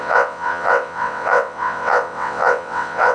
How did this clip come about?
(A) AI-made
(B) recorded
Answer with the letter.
A